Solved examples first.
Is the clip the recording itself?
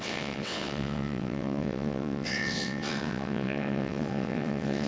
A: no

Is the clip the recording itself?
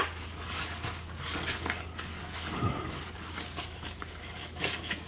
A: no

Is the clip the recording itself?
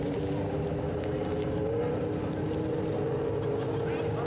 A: yes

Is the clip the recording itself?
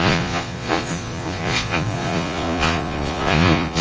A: no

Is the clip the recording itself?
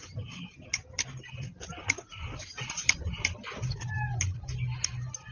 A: yes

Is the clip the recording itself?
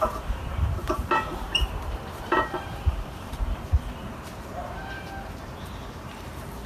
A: no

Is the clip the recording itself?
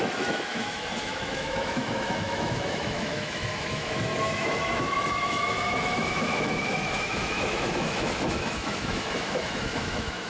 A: no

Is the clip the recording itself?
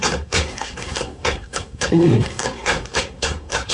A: no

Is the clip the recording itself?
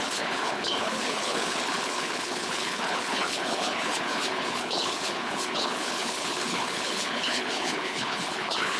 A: no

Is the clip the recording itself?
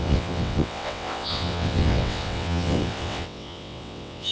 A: no